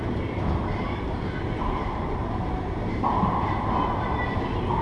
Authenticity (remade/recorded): remade